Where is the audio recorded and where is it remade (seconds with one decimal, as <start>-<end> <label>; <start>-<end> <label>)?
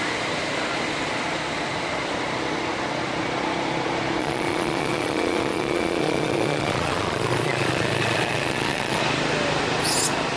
0.0-4.2 recorded; 4.2-9.0 remade; 9.0-10.4 recorded